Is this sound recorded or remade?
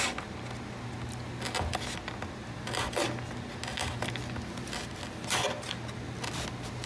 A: recorded